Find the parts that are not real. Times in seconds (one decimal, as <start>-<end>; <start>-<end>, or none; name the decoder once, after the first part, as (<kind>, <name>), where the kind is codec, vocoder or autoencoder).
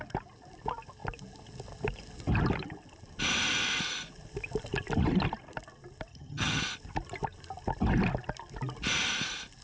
6.1-6.6 (vocoder, HiFi-GAN)